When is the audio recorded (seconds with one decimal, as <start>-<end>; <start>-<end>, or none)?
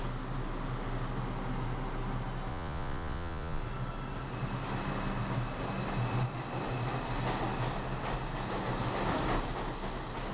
0.0-2.5; 3.6-10.3